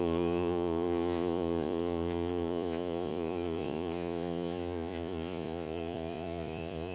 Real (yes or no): no